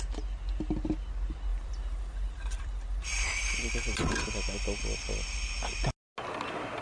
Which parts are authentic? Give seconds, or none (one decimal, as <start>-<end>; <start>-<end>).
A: 0.0-1.5; 4.1-6.8